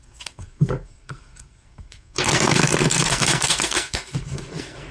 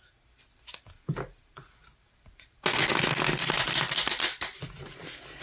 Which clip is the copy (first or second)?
first